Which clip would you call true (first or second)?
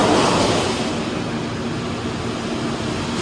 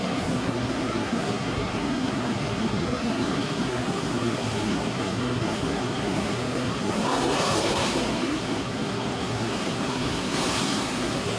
first